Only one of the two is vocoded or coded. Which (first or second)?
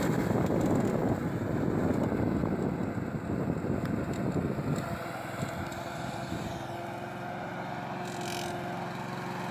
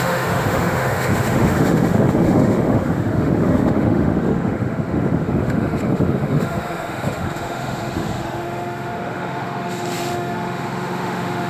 second